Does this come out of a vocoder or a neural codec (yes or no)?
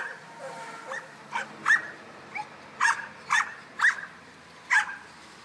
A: no